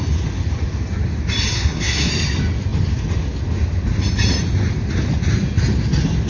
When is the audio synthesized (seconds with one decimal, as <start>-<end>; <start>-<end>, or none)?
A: 1.5-2.1